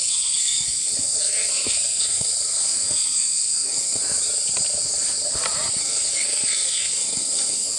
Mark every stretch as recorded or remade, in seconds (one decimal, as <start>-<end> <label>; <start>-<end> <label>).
0.0-4.0 remade; 4.0-5.8 recorded; 5.8-7.8 remade